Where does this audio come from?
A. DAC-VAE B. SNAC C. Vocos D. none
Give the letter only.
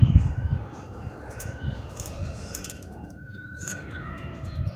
A